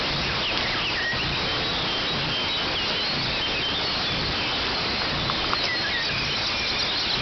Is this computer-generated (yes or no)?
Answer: no